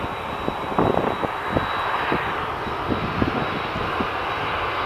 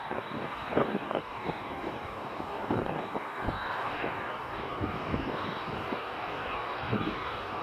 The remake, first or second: second